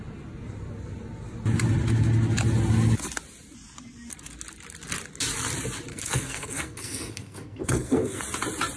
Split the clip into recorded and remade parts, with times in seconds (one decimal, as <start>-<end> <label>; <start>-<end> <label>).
0.0-5.9 recorded; 5.9-8.2 remade; 8.2-8.8 recorded